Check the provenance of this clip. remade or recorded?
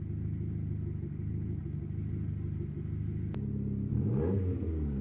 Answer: recorded